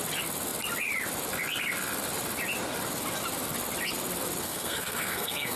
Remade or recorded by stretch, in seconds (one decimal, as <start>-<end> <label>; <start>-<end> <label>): 0.0-4.4 recorded; 4.4-5.6 remade